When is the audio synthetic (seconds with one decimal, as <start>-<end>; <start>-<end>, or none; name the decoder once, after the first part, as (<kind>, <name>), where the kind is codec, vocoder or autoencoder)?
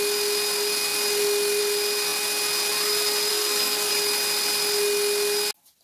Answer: 3.3-3.9 (codec, SNAC)